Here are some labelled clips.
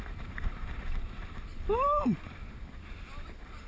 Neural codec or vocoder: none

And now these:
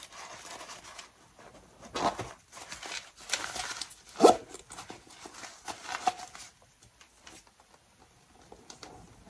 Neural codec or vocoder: none